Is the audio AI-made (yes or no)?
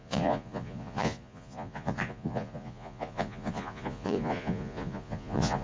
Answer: yes